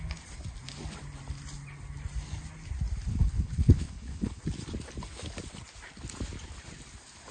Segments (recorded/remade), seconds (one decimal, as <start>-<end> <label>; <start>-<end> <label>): 0.0-3.1 recorded; 3.1-4.4 remade; 4.4-7.3 recorded